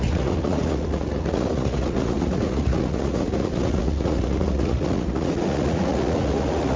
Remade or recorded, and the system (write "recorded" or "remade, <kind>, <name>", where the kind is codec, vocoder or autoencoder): remade, vocoder, Vocos